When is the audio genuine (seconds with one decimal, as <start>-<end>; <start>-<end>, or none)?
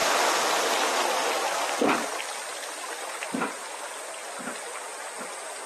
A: 0.0-3.6; 5.3-5.7